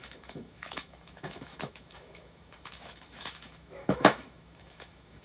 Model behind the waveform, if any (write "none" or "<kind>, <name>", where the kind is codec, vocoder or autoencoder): autoencoder, DAC-VAE